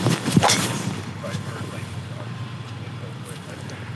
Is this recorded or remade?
remade